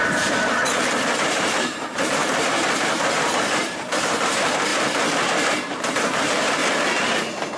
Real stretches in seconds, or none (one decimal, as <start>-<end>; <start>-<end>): 4.7-5.7; 6.6-7.6